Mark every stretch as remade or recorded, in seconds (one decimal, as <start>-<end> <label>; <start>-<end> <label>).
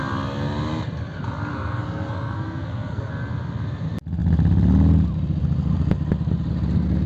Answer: 0.0-1.5 recorded; 1.5-3.1 remade; 3.1-7.1 recorded